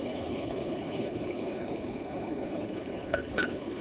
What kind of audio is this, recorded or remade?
remade